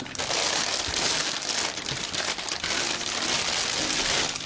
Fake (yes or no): no